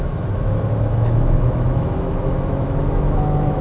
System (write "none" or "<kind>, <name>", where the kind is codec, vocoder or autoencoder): autoencoder, DAC-VAE